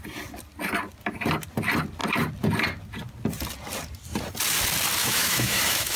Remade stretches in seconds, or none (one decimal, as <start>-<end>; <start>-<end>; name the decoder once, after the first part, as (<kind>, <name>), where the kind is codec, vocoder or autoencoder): 5.0-6.0 (autoencoder, DAC-VAE)